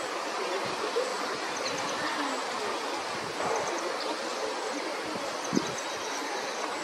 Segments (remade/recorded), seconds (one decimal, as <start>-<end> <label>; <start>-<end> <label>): 0.0-6.8 recorded